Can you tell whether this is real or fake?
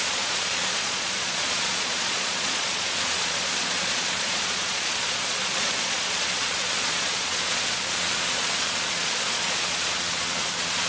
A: fake